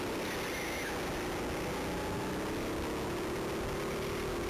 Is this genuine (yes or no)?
yes